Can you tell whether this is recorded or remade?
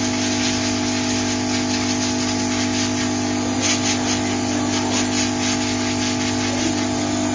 recorded